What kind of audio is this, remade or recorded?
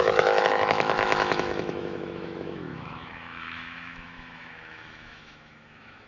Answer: remade